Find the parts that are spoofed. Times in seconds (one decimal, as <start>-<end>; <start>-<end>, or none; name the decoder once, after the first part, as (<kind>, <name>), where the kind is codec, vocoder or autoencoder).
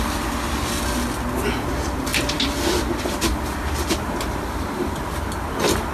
none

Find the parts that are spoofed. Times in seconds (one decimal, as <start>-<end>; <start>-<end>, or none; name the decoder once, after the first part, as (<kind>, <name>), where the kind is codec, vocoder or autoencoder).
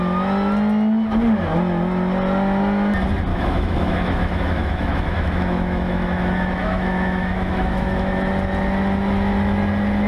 3.3-8.3 (autoencoder, DAC-VAE)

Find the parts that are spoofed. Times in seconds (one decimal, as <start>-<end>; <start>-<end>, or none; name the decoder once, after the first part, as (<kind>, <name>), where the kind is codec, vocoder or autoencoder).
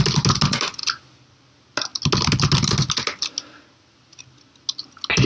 none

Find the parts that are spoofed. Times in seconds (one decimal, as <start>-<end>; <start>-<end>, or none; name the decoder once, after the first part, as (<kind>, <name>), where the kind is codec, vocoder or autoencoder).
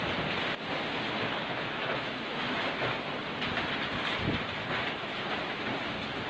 1.4-2.4 (autoencoder, DAC-VAE)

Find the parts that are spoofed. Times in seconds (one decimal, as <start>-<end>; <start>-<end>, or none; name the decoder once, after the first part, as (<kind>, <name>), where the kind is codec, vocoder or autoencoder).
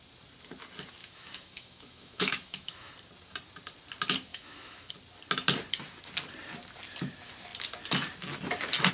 1.0-2.9 (autoencoder, DAC-VAE); 4.3-4.9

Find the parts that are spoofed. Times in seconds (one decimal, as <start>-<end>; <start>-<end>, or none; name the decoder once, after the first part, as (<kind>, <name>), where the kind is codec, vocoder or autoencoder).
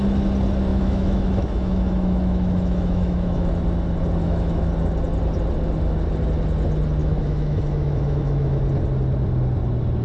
0.7-3.5 (autoencoder, DAC-VAE); 4.2-4.7; 7.0-8.6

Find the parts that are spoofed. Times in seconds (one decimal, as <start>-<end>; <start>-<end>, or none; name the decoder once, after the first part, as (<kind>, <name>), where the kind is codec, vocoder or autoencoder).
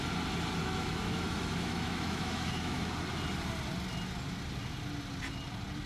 0.6-2.9 (autoencoder, DAC-VAE)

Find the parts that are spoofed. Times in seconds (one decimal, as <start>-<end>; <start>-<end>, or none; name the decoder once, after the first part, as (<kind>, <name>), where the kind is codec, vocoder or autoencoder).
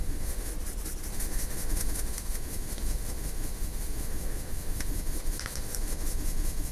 0.0-0.5 (autoencoder, DAC-VAE); 1.1-6.7